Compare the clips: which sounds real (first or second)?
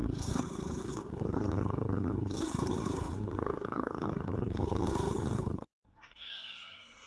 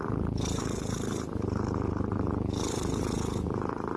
second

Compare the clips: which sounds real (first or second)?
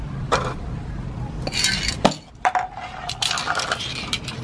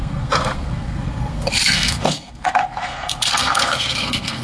first